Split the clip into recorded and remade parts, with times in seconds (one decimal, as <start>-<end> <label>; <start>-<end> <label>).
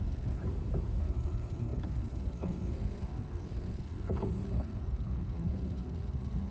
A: 0.0-0.4 remade; 0.4-1.0 recorded; 1.0-6.5 remade